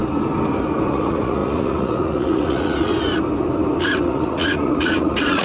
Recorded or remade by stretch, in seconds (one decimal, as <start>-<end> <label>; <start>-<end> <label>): 0.0-0.9 recorded; 0.9-2.9 remade; 2.9-3.8 recorded; 3.8-5.4 remade